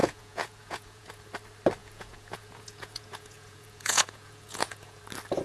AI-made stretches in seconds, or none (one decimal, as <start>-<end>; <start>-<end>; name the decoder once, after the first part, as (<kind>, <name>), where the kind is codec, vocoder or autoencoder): 0.0-1.1 (vocoder, Vocos); 1.8-5.0